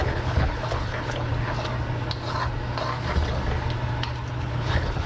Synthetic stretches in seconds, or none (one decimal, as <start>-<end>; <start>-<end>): 0.0-1.3; 4.3-5.1